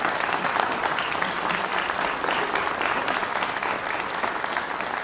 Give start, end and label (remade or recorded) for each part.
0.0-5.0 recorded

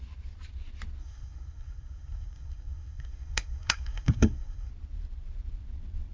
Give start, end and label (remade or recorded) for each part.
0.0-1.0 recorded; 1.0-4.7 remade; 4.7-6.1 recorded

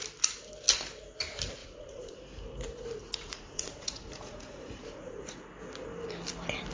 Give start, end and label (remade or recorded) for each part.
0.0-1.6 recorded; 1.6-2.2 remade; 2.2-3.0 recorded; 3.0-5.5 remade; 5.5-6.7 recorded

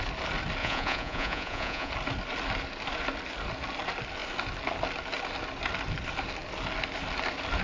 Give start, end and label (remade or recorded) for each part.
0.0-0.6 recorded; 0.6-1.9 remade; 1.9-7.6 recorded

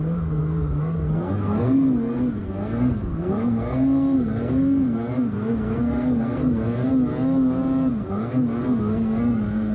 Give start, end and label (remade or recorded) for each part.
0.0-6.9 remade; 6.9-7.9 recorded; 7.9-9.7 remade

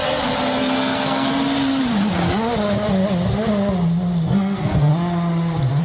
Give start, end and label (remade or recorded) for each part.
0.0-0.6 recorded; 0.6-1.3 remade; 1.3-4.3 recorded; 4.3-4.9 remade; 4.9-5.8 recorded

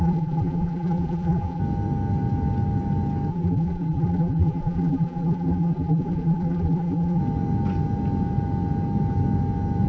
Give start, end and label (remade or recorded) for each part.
0.0-1.6 remade; 1.6-3.3 recorded; 3.3-7.2 remade; 7.2-9.9 recorded

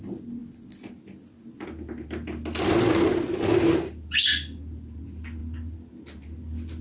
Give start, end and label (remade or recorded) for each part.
0.0-6.8 recorded